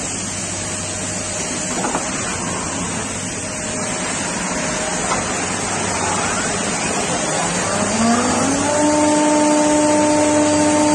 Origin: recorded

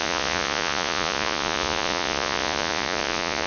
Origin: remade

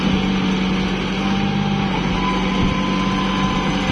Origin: recorded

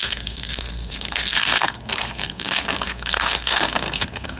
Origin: remade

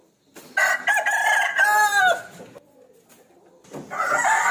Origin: recorded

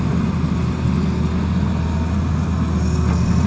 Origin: recorded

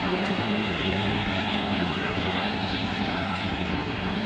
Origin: remade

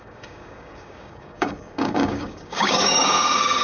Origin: remade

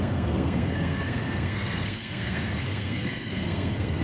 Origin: remade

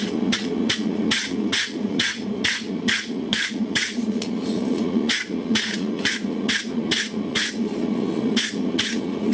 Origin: remade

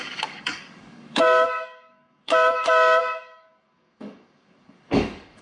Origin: remade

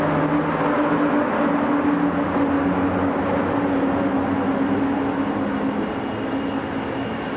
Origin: recorded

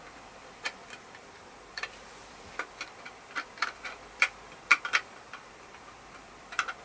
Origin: remade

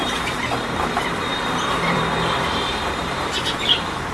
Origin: remade